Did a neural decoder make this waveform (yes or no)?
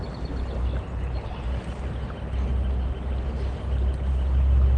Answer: no